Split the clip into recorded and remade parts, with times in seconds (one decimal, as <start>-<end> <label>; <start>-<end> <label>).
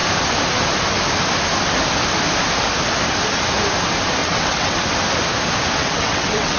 0.0-4.2 recorded; 4.2-4.8 remade; 4.8-5.8 recorded; 5.8-6.6 remade